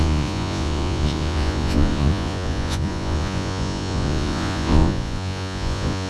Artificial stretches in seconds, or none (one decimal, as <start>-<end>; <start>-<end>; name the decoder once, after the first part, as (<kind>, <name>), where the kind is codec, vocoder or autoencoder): 0.0-6.1 (vocoder, Vocos)